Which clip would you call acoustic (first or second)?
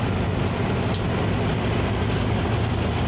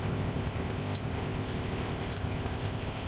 first